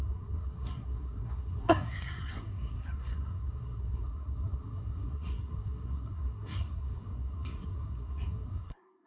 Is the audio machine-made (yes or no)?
yes